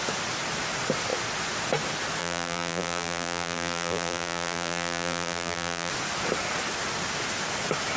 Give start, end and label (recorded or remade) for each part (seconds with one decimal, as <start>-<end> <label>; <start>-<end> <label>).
0.0-2.2 recorded; 2.2-5.9 remade; 5.9-8.0 recorded